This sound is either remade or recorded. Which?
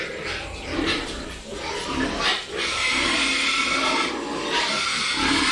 recorded